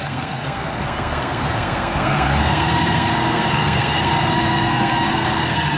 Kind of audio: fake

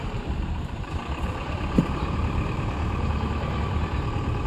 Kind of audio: fake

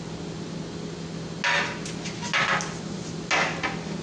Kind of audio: real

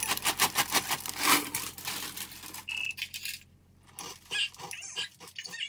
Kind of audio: real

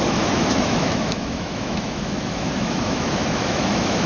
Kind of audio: fake